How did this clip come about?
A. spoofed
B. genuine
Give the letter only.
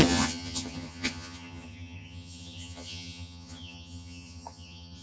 A